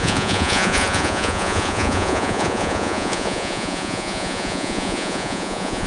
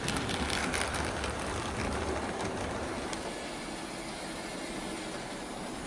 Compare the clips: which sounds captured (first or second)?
second